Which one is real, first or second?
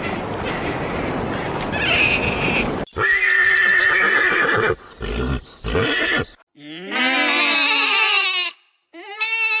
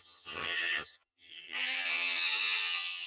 first